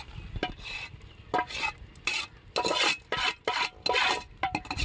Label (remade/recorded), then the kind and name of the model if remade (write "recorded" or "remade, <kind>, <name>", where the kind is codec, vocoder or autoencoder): recorded